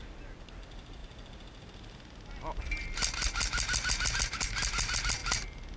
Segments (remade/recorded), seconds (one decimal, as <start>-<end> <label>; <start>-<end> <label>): 0.0-5.8 recorded